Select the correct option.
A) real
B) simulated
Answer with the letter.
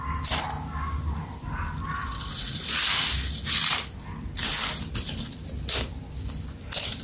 A